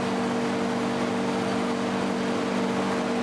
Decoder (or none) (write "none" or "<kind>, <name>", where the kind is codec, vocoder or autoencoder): none